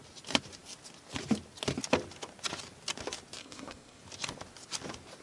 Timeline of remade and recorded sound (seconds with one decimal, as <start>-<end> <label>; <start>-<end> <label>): 0.0-3.4 recorded; 3.4-4.0 remade; 4.0-5.2 recorded